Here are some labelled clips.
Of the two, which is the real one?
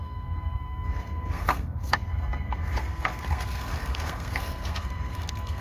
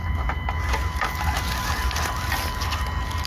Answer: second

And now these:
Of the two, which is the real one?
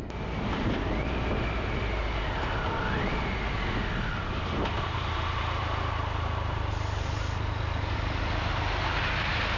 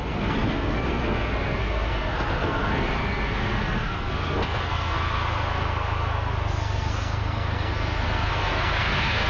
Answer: first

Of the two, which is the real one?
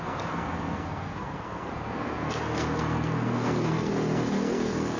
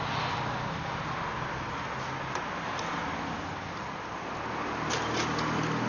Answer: second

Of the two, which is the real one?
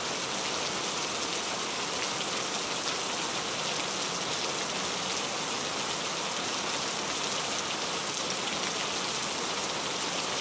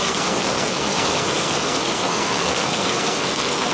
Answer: first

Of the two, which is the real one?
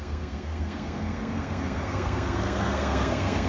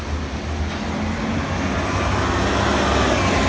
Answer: second